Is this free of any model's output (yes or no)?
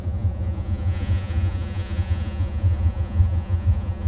no